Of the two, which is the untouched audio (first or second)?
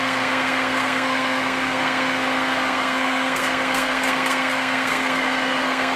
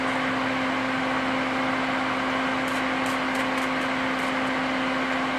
second